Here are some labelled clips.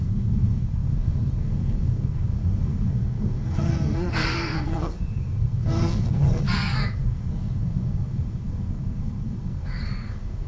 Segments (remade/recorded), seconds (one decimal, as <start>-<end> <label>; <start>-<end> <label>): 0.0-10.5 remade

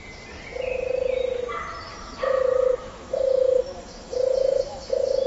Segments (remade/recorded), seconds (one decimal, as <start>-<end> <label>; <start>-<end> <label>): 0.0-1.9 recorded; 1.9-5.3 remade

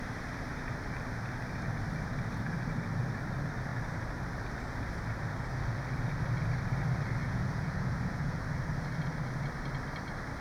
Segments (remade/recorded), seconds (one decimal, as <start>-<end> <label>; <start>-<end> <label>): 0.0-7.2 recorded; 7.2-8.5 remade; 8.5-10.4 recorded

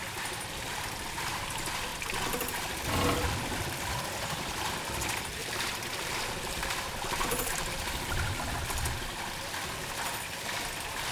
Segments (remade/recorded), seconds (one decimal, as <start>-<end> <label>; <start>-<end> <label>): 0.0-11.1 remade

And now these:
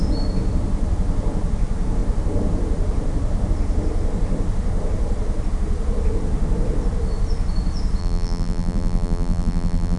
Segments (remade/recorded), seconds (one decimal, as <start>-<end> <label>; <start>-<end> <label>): 0.0-8.0 recorded; 8.0-10.0 remade

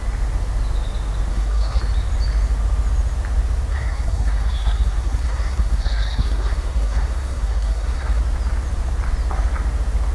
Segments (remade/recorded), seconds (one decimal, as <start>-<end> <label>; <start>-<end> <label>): 0.0-1.3 recorded; 1.3-1.8 remade; 1.8-3.7 recorded; 3.7-8.2 remade; 8.2-10.1 recorded